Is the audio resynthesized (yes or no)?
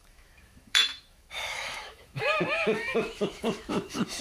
yes